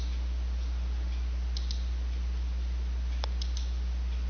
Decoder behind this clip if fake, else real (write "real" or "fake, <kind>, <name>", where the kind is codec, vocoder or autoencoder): real